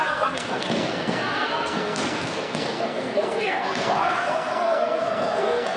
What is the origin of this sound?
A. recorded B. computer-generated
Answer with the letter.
B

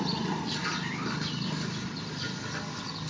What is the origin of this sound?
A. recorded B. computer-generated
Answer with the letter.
A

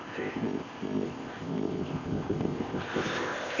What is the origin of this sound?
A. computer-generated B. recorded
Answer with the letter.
A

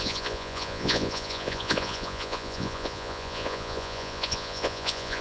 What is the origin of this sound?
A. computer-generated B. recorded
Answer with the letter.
A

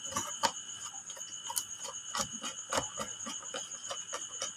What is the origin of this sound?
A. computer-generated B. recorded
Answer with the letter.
B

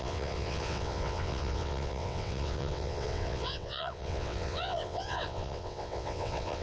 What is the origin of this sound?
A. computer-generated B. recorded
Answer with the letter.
A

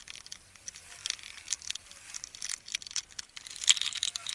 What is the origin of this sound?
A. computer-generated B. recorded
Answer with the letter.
B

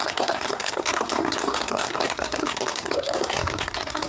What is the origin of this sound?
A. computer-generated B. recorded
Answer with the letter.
A